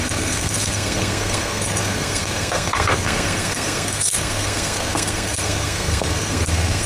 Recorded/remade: remade